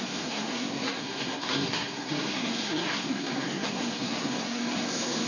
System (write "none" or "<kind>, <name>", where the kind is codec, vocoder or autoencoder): codec, SNAC